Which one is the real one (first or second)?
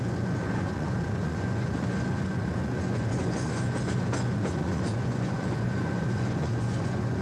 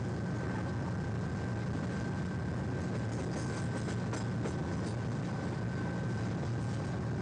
second